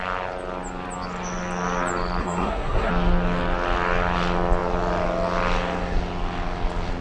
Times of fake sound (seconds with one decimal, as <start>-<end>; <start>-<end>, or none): 2.2-2.9